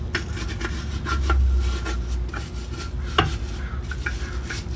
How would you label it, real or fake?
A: real